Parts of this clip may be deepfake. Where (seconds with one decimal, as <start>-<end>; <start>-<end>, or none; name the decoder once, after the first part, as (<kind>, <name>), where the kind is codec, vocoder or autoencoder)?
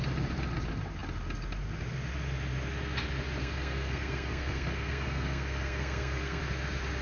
3.4-6.4 (codec, SNAC)